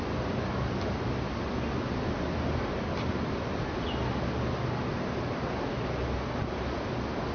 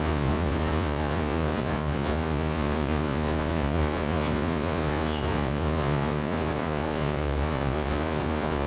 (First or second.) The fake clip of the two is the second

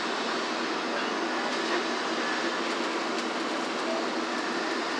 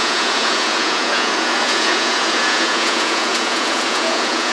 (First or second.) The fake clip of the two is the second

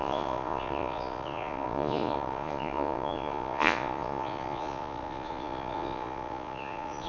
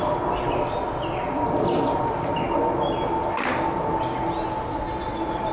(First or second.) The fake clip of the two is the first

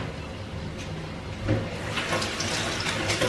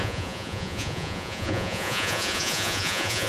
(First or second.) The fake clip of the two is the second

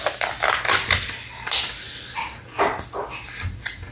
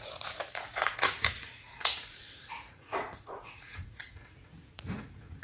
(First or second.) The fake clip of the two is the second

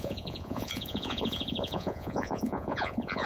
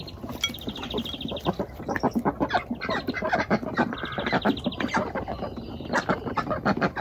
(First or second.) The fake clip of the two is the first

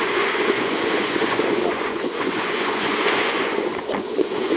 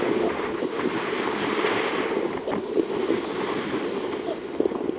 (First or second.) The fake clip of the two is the first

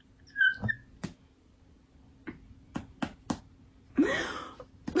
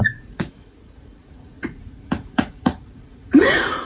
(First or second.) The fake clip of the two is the second